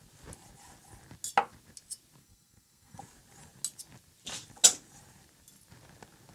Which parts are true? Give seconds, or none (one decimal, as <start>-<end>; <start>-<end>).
0.0-2.2; 3.0-6.3